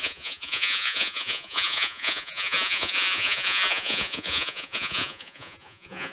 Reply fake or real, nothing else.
fake